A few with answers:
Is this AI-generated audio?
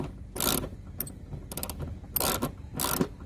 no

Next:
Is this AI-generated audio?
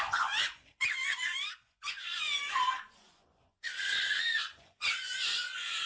yes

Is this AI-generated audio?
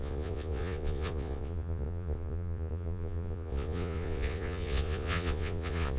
yes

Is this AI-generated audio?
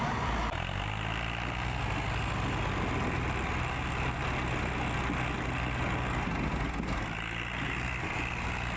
no